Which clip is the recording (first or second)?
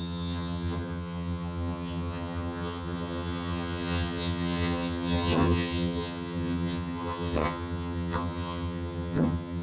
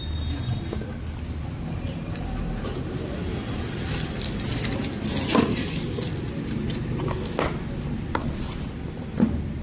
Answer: second